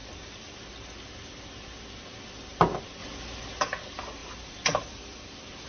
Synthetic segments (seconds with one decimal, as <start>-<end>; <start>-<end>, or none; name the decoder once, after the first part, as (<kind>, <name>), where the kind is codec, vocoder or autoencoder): 0.0-0.6 (vocoder, BigVGAN v2); 4.2-5.2